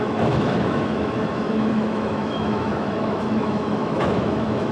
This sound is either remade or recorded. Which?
remade